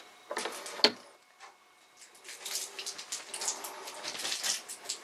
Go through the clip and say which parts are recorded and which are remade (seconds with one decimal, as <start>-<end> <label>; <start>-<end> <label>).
0.0-5.0 recorded

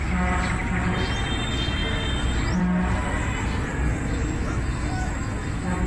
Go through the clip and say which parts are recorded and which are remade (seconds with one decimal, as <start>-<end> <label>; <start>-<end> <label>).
0.0-3.7 recorded; 3.7-5.9 remade

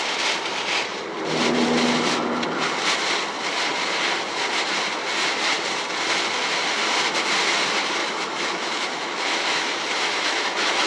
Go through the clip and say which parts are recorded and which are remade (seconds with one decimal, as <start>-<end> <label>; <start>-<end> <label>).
0.0-8.0 recorded; 8.0-10.9 remade

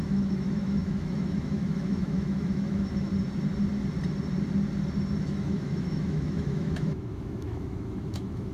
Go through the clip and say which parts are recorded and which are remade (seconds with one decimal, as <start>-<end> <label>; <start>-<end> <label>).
0.0-3.1 remade; 3.1-5.2 recorded; 5.2-8.5 remade

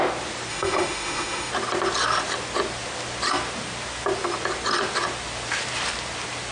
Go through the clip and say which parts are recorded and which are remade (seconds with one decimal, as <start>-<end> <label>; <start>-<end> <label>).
0.0-0.5 recorded; 0.5-1.5 remade; 1.5-6.5 recorded

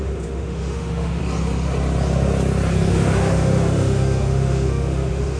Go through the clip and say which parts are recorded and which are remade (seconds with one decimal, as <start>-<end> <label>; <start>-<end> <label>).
0.0-1.2 remade; 1.2-2.9 recorded; 2.9-5.4 remade